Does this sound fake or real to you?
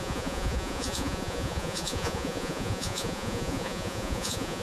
fake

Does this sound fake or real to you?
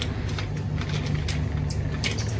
real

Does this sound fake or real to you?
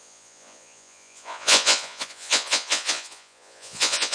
fake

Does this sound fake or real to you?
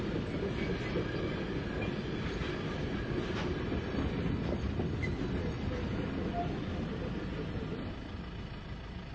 real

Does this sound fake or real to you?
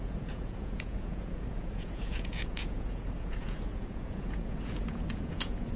fake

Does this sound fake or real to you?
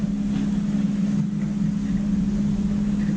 real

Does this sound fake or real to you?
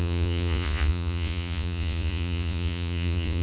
fake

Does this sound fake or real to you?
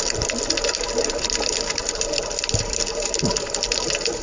real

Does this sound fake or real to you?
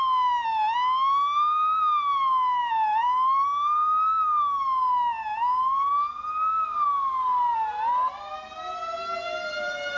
real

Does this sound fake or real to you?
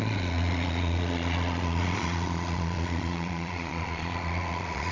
fake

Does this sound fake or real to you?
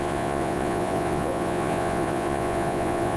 fake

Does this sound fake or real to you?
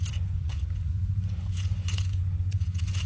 fake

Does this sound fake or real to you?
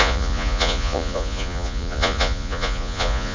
fake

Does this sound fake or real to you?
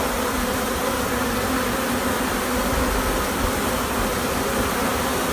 real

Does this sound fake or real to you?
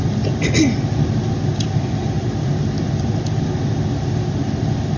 real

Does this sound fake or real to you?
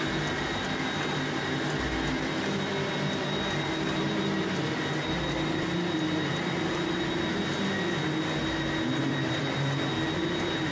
real